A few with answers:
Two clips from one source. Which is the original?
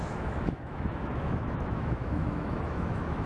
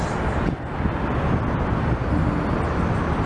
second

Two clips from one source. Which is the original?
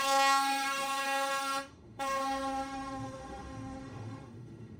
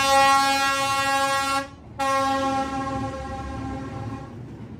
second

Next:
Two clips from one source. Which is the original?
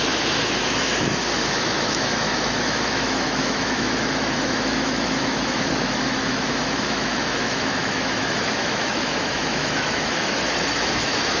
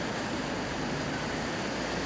second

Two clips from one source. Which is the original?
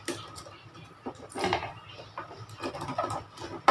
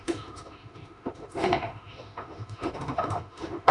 first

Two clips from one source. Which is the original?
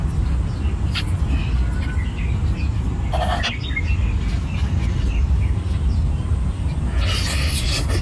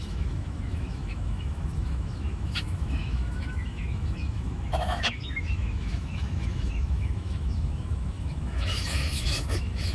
first